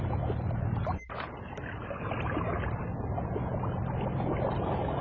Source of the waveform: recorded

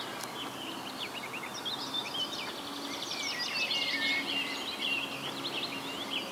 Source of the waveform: recorded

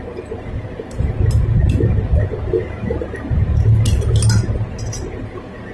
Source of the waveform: recorded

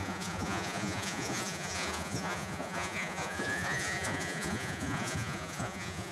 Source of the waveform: remade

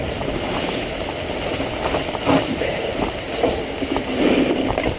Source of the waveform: recorded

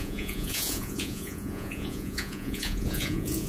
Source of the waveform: remade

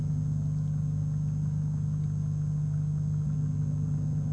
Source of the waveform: recorded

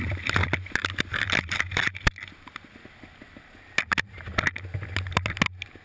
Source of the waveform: recorded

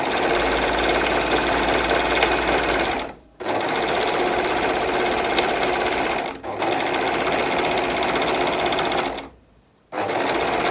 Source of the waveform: recorded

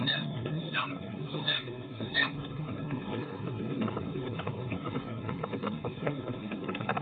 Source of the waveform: remade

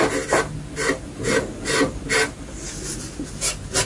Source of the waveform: recorded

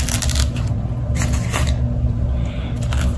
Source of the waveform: recorded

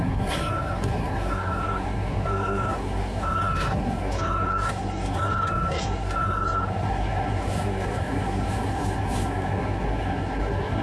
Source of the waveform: remade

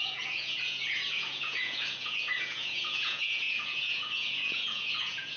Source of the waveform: remade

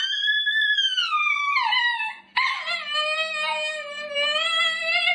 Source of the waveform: recorded